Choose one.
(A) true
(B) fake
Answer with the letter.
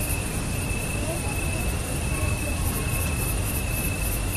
A